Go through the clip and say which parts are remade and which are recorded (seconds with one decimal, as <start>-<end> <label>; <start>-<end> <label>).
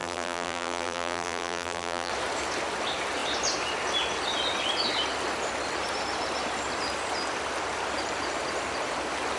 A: 0.0-2.1 remade; 2.1-9.4 recorded